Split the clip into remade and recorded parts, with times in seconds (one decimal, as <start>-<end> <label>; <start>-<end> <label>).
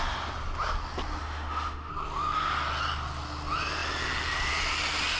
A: 0.0-1.2 recorded; 1.2-1.9 remade; 1.9-5.2 recorded